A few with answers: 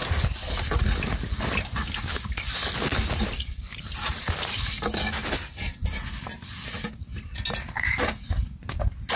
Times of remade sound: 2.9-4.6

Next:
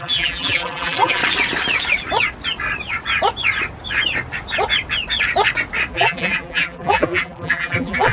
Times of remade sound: 0.0-1.2; 5.9-8.1

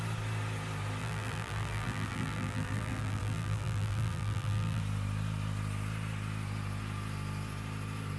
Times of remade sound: 1.0-4.8

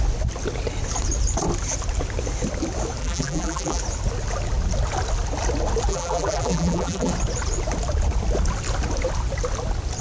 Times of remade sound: 3.0-3.8; 5.9-7.1

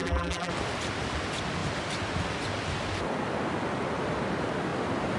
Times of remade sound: 0.0-0.5